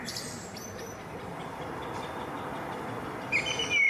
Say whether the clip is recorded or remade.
remade